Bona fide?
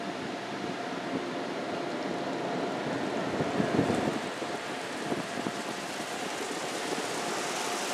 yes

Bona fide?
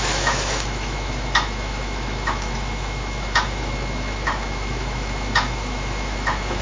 no